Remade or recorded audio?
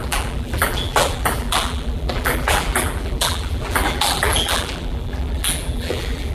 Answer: remade